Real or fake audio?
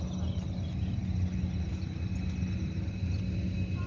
real